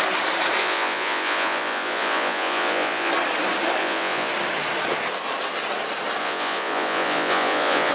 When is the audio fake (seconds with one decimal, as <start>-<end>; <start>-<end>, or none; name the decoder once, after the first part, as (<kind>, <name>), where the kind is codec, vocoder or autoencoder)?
0.6-3.1 (vocoder, Vocos); 3.8-4.3; 6.2-7.9